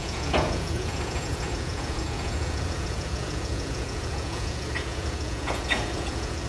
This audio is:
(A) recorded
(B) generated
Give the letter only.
B